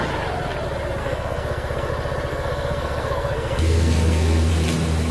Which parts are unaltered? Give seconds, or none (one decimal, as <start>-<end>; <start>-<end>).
0.0-1.0; 1.9-2.3; 4.5-5.1